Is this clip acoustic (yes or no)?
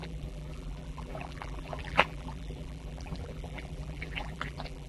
no